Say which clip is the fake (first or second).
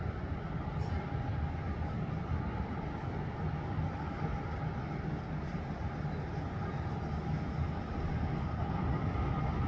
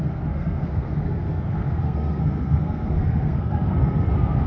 second